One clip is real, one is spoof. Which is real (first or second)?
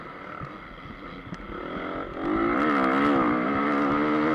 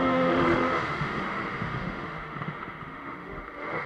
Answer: first